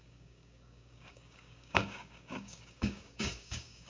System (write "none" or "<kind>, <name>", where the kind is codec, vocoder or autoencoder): codec, DAC